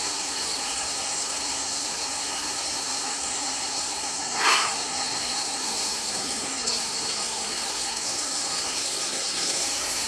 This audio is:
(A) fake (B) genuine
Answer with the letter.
A